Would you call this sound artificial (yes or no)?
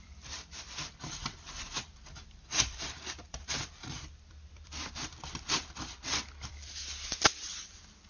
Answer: yes